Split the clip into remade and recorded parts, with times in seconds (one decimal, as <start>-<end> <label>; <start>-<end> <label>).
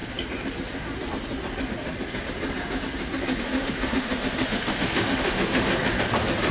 0.0-3.4 recorded; 3.4-5.7 remade; 5.7-6.5 recorded